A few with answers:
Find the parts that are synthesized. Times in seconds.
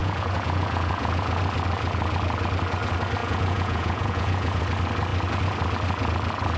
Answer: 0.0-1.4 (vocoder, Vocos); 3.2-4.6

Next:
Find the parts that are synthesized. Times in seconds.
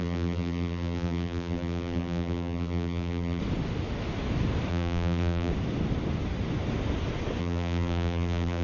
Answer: 0.0-3.4 (vocoder, BigVGAN v2); 4.7-5.5; 7.4-8.6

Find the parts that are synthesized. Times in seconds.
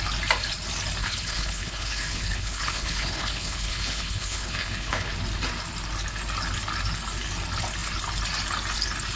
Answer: 1.0-5.1 (codec, HILCodec)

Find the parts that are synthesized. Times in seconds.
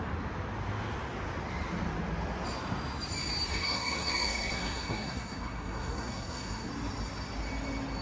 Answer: 3.5-6.7 (codec, SNAC)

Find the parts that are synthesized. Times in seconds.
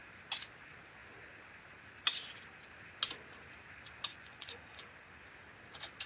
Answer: 4.1-4.8 (vocoder, Vocos)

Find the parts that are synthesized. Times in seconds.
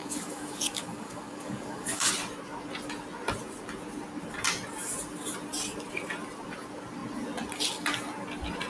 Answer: 0.0-2.1 (codec, DAC)